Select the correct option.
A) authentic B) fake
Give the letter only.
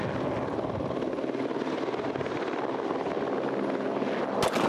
A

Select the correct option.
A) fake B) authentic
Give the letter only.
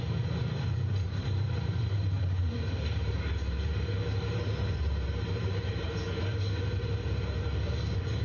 A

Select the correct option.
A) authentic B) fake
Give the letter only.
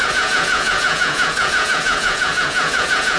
B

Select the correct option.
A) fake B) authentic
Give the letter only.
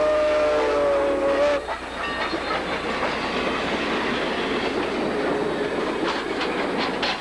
B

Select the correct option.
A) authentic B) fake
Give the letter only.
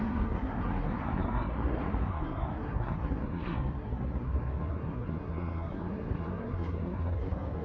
B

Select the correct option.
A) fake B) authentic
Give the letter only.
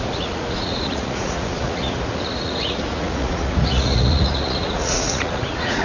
A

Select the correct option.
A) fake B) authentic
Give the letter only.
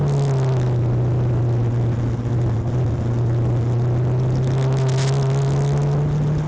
B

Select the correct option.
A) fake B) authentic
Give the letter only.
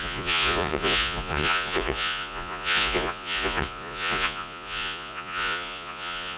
A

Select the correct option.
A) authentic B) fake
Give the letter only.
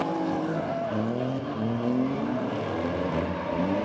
A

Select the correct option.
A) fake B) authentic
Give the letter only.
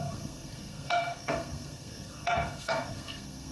A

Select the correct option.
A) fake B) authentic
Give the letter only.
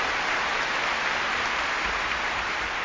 B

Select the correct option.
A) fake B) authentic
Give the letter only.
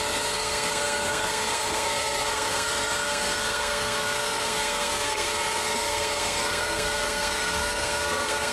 A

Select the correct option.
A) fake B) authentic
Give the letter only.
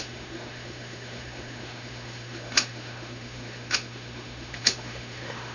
A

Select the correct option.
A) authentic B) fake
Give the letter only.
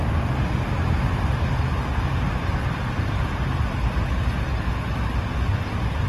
A